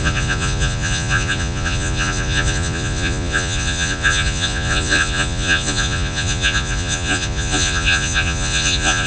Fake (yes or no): yes